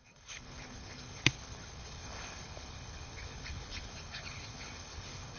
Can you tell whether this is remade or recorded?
remade